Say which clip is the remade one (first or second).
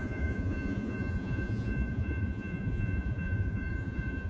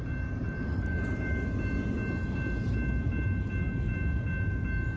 first